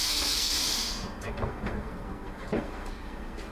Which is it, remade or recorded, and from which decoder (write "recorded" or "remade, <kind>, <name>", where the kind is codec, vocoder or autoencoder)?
remade, codec, SNAC